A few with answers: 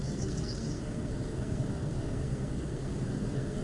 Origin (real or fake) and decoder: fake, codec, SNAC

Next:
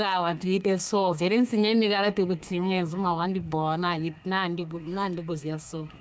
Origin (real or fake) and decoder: fake, codec, SNAC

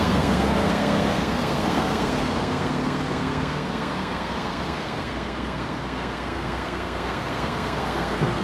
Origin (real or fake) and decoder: fake, codec, SNAC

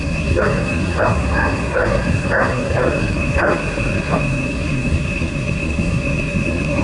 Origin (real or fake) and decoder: fake, codec, SNAC